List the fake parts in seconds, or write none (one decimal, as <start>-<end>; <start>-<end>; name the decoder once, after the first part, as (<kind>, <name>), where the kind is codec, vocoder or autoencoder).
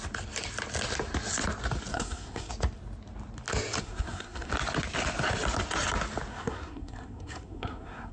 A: 1.9-2.5 (codec, SNAC); 3.8-4.5; 6.3-8.1